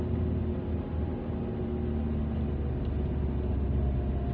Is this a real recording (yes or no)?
yes